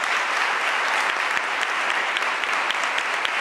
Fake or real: fake